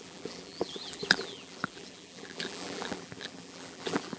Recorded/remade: remade